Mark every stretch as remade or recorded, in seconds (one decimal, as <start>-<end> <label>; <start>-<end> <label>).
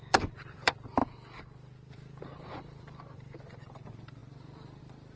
0.0-1.0 remade; 1.0-1.9 recorded; 1.9-5.2 remade